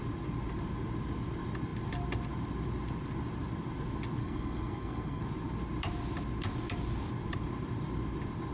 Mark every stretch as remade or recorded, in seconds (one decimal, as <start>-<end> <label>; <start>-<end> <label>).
0.0-4.2 recorded; 4.2-5.2 remade; 5.2-8.5 recorded